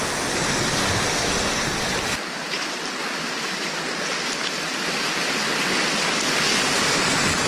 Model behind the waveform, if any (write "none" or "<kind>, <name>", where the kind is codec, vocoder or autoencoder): none